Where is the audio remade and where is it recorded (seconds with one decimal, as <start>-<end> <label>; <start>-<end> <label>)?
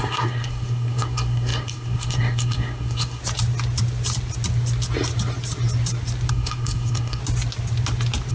0.0-3.2 remade; 3.2-6.3 recorded; 6.3-7.2 remade; 7.2-8.3 recorded